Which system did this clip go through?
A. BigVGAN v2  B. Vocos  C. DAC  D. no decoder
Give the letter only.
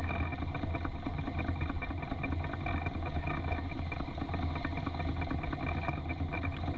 D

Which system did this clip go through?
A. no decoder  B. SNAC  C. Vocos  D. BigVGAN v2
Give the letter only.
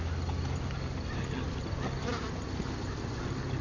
A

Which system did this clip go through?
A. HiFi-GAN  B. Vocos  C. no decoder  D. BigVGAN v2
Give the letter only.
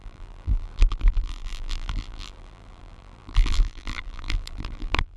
D